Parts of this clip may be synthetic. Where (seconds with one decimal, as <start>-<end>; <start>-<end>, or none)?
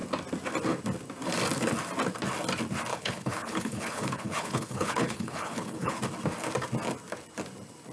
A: 2.9-6.0